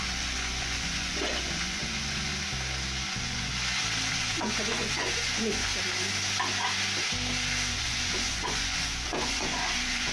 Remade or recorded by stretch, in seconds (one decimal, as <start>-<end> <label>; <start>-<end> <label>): 0.0-2.3 remade; 2.3-3.1 recorded; 3.1-3.5 remade; 3.5-4.1 recorded; 4.1-5.7 remade; 5.7-7.7 recorded; 7.7-10.1 remade